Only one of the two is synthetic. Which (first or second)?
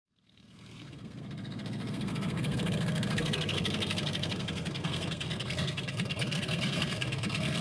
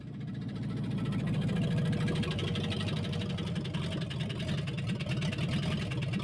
first